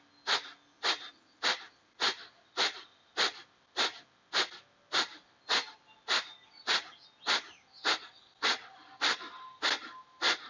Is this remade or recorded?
recorded